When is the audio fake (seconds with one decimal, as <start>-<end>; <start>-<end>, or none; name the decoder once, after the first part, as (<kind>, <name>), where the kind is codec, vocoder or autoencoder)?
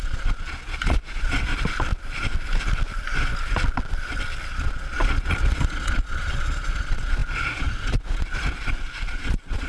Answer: 0.0-1.5 (vocoder, Vocos); 4.5-9.7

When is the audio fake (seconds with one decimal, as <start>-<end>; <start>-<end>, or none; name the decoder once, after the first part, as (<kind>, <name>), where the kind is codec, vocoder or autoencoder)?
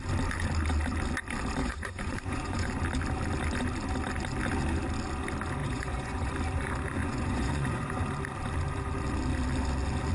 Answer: 1.6-2.7 (vocoder, Vocos); 5.6-6.3; 7.0-8.0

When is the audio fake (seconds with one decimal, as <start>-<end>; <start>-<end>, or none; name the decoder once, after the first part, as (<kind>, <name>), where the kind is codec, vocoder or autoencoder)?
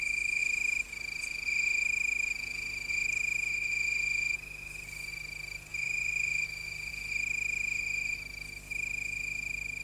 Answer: 5.7-6.9 (vocoder, Vocos)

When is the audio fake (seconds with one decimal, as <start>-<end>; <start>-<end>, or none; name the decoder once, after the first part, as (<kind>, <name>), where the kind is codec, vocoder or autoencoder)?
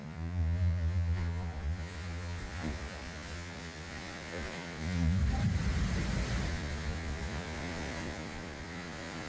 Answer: 0.0-5.2 (vocoder, Vocos); 6.5-9.3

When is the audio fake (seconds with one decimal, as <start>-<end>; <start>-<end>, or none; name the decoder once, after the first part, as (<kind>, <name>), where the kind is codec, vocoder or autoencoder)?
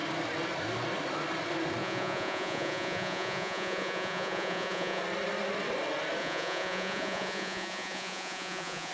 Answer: 1.8-5.0 (vocoder, Vocos); 6.2-8.9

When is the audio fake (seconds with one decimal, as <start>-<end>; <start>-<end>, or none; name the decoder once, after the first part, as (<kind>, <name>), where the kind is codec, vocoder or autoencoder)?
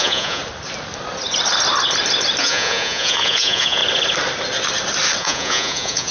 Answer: 0.0-0.4 (vocoder, Vocos); 2.4-3.8; 5.2-6.1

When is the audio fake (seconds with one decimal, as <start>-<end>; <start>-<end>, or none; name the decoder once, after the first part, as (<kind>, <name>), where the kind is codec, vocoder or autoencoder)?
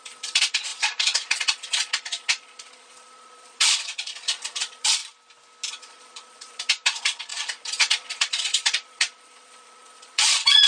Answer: 0.0-5.0 (vocoder, Vocos); 5.7-10.7